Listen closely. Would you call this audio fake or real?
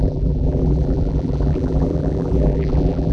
fake